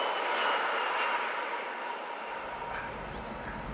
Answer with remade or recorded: recorded